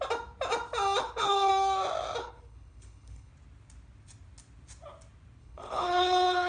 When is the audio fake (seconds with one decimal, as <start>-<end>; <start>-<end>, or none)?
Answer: 1.0-1.5; 2.2-3.3; 5.4-6.5